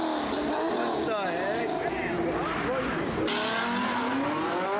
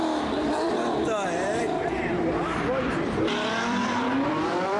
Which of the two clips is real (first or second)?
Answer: first